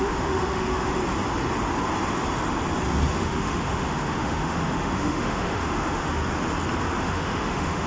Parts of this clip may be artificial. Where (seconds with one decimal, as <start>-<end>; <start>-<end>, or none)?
0.0-1.0; 3.2-6.2; 7.0-7.9